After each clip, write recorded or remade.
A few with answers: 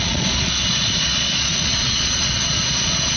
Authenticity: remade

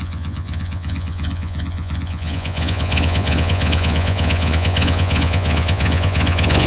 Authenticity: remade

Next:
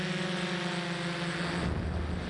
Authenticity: recorded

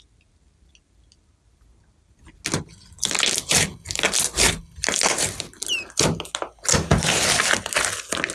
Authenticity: recorded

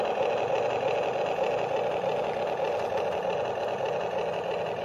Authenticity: recorded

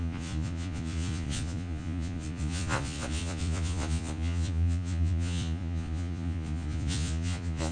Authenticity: remade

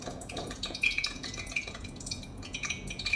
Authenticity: remade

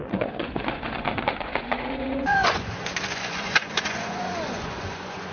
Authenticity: remade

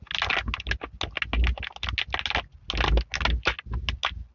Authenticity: recorded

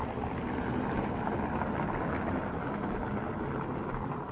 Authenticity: recorded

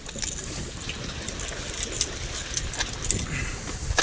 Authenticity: recorded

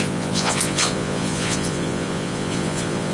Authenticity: remade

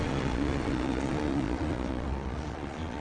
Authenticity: remade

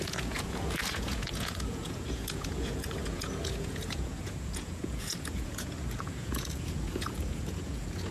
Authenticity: remade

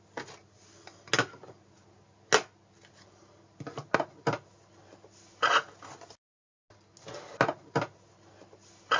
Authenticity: recorded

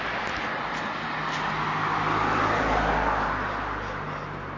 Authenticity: recorded